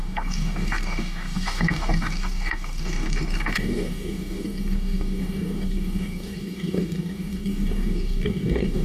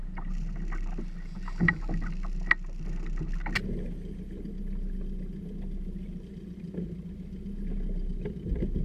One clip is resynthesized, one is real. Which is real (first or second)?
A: second